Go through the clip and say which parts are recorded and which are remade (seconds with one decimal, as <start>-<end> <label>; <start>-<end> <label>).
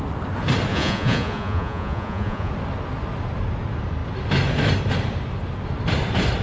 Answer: 0.0-0.7 recorded; 0.7-2.5 remade; 2.5-6.4 recorded